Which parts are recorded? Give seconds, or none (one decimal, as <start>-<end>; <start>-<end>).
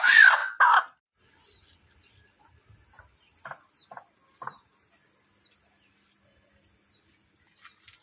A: 0.0-8.0